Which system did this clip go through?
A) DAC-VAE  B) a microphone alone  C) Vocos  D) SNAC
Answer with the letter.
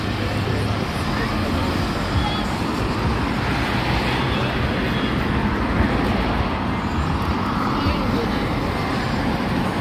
B